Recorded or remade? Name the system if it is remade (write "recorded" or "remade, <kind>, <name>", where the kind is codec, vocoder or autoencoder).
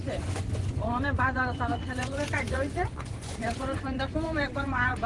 remade, vocoder, Vocos